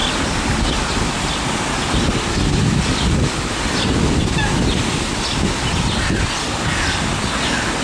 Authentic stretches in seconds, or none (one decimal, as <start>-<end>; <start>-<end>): 1.9-7.8